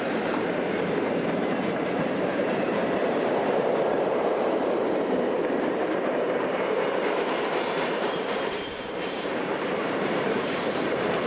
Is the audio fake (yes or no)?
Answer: yes